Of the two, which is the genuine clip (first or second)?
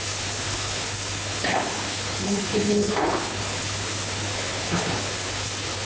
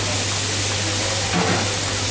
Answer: second